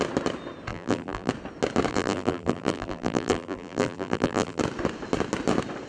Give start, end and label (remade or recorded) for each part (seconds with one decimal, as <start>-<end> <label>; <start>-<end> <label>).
0.0-0.7 recorded; 0.7-1.3 remade; 1.3-1.9 recorded; 1.9-4.6 remade; 4.6-5.9 recorded